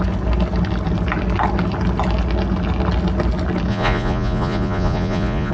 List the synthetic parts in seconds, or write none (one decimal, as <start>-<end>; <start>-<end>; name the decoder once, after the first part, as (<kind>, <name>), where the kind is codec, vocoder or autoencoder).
3.7-5.5 (vocoder, Vocos)